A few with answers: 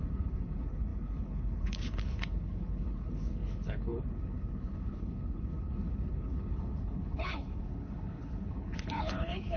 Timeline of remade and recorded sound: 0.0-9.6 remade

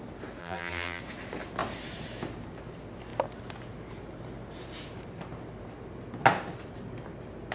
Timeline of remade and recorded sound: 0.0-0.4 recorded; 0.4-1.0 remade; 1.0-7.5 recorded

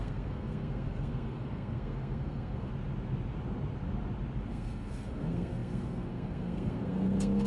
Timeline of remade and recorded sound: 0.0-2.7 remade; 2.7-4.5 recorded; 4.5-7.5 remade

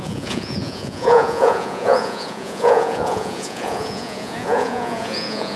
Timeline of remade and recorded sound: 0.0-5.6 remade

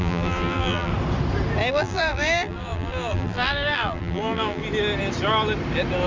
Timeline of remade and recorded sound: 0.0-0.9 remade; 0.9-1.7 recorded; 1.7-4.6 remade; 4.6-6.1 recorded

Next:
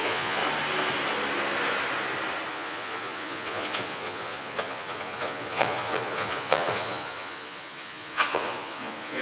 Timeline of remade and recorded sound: 0.0-0.4 remade; 0.4-2.5 recorded; 2.5-9.2 remade

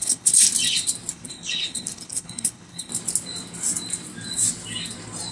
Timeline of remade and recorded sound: 0.0-0.5 remade; 0.5-1.1 recorded; 1.1-2.9 remade; 2.9-5.3 recorded

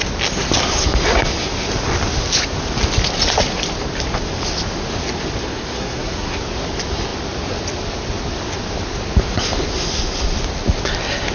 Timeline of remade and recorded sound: 0.0-5.4 recorded; 5.4-6.4 remade; 6.4-11.3 recorded